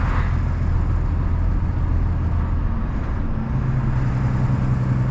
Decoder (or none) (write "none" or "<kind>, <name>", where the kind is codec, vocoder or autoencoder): none